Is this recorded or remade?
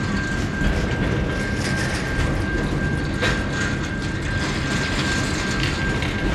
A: recorded